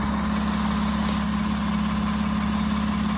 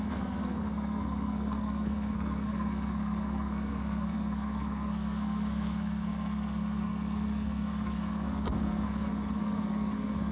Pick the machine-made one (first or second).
second